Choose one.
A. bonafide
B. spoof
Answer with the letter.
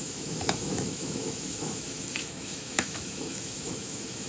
B